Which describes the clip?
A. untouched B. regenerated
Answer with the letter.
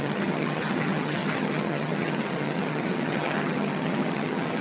B